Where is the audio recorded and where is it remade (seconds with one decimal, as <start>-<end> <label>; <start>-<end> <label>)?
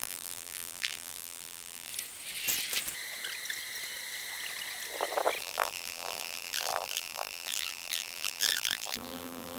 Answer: 0.0-1.9 remade; 1.9-5.4 recorded; 5.4-9.6 remade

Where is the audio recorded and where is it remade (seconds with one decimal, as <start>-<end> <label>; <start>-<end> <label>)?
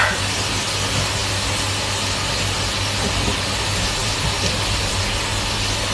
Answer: 0.0-4.0 recorded; 4.0-5.2 remade; 5.2-5.9 recorded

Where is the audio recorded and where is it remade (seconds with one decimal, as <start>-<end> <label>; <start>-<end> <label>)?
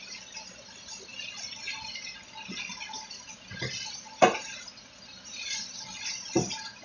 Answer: 0.0-1.1 recorded; 1.1-1.9 remade; 1.9-6.8 recorded